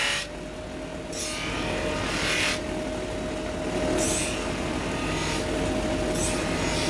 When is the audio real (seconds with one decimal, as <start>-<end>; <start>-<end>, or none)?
0.0-6.9